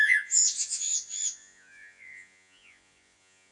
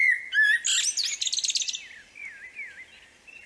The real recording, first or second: second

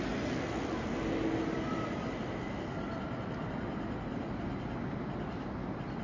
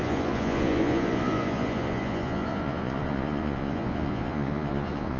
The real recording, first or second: first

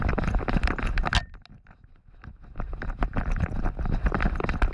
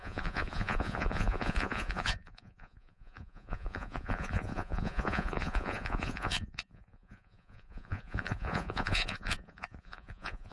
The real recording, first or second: first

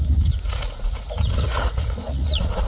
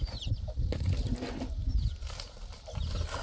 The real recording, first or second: second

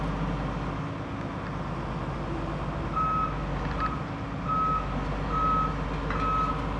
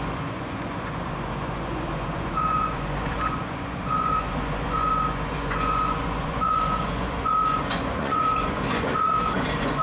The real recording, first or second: first